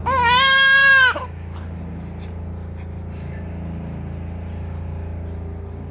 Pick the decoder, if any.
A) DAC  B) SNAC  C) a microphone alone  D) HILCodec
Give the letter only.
C